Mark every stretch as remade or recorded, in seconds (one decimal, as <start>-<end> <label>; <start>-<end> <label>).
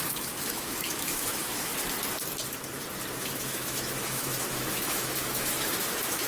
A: 0.0-1.7 remade; 1.7-3.2 recorded; 3.2-6.3 remade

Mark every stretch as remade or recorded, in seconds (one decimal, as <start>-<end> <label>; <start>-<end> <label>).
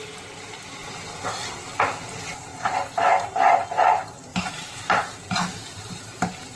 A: 0.0-6.6 recorded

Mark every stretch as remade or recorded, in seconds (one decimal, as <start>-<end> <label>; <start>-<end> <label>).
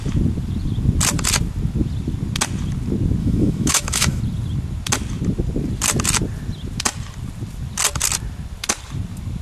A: 0.0-3.2 recorded; 3.2-4.2 remade; 4.2-9.4 recorded